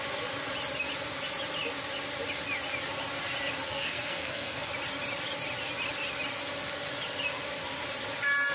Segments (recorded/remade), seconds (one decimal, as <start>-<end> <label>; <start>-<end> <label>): 0.0-3.7 recorded; 3.7-4.7 remade; 4.7-8.5 recorded